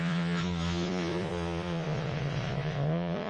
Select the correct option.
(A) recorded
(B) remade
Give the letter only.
B